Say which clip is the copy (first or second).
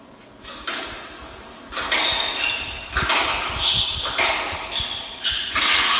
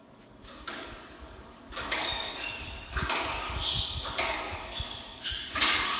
second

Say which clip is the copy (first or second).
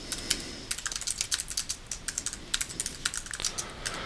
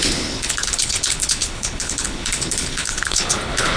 second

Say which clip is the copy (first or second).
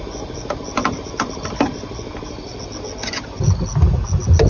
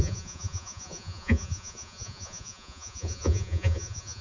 second